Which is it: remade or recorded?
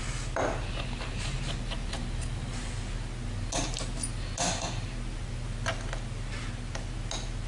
recorded